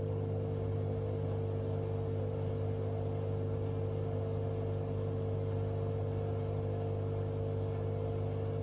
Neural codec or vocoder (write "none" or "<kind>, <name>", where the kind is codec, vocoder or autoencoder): none